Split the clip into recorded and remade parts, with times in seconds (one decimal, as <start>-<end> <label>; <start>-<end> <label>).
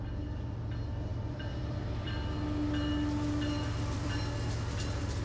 0.0-1.1 recorded; 1.1-4.2 remade; 4.2-5.2 recorded